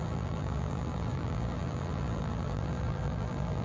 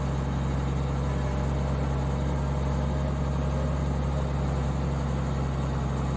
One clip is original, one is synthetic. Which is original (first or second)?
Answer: second